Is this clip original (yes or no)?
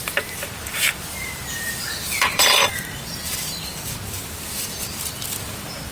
no